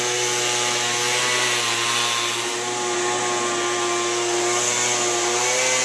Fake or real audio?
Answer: real